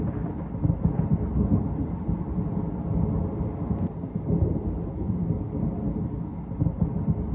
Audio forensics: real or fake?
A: real